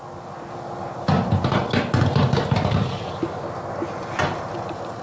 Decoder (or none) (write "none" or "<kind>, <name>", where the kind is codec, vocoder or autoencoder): none